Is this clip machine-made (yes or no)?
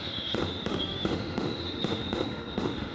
yes